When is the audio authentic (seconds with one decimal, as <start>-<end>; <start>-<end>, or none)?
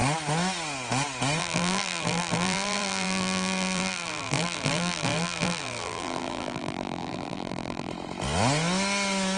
0.0-1.4; 7.9-9.4